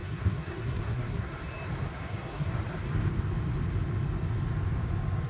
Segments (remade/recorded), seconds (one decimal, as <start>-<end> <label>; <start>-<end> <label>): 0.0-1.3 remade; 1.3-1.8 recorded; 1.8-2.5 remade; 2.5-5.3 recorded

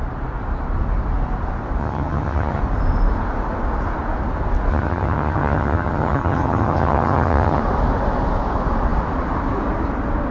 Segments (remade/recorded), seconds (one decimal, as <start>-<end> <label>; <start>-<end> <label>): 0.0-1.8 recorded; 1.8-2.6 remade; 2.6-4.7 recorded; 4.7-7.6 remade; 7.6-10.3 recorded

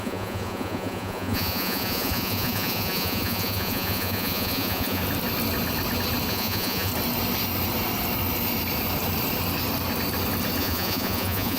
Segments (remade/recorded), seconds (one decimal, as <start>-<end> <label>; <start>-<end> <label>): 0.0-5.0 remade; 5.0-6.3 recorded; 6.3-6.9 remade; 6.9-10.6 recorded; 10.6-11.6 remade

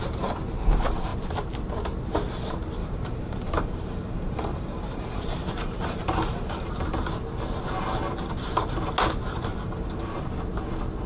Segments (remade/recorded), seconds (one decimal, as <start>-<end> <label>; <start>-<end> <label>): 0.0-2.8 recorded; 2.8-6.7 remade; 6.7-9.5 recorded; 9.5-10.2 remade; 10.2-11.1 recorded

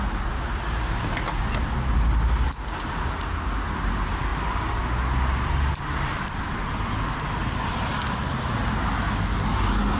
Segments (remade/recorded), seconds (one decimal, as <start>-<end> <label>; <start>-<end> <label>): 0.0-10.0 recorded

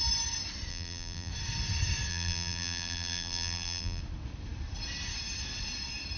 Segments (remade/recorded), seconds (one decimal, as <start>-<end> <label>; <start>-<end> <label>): 0.0-0.7 recorded; 0.7-1.3 remade; 1.3-2.1 recorded; 2.1-4.0 remade; 4.0-6.2 recorded